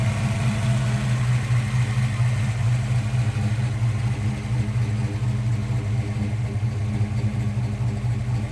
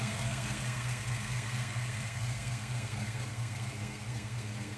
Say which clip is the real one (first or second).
first